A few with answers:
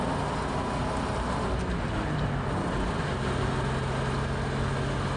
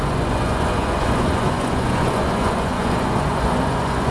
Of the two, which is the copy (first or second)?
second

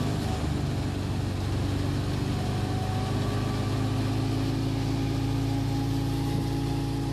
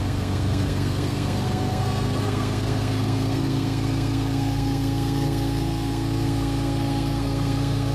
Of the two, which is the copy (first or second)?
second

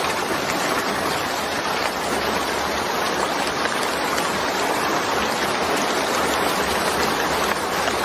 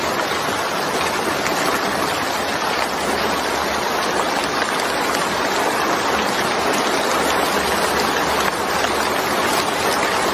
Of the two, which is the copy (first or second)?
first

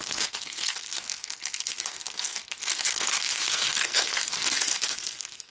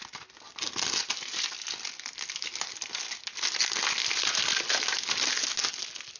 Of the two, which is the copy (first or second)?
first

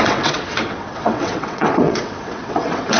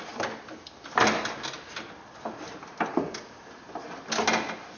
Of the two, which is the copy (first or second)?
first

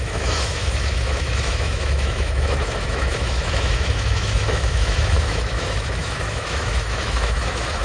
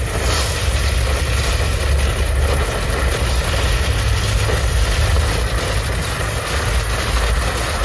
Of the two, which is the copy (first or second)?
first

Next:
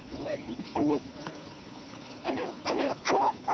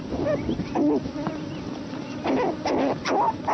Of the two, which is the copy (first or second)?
first